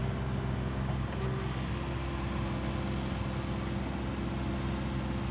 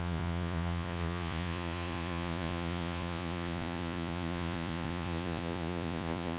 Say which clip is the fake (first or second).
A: second